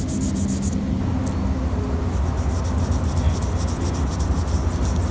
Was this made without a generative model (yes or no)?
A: yes